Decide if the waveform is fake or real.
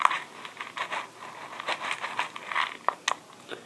real